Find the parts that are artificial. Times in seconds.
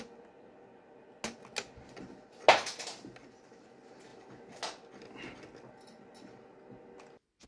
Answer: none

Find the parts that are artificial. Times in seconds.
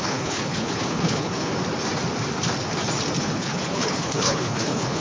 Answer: 0.0-1.5; 3.2-5.0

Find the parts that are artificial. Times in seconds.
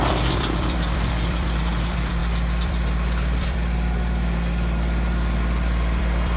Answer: 0.0-6.4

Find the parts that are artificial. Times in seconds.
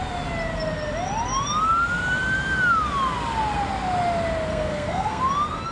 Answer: 4.5-5.2